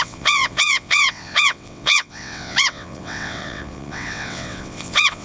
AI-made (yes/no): yes